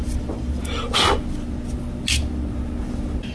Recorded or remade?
recorded